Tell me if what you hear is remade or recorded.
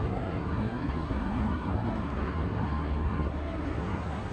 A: remade